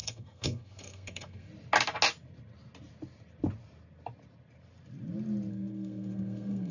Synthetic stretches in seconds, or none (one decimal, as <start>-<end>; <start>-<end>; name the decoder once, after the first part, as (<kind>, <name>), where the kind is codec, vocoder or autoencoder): 0.0-1.5 (codec, SNAC); 5.5-6.7